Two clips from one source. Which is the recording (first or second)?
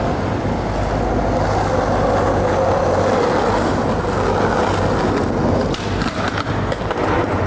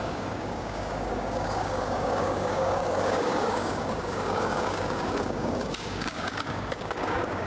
first